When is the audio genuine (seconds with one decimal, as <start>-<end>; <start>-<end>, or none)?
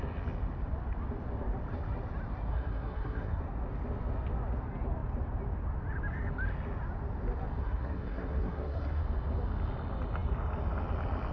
0.0-2.5; 3.4-7.6; 9.0-11.3